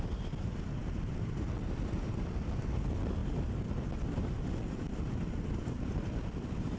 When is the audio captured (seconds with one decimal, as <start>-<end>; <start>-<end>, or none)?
0.0-6.8

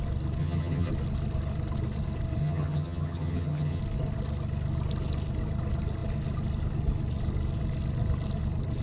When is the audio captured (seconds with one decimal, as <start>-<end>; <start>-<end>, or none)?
0.0-0.4; 0.9-2.4; 3.8-8.8

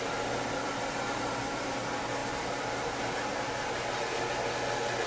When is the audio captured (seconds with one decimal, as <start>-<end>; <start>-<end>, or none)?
0.0-5.1